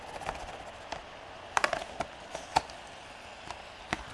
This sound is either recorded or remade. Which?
recorded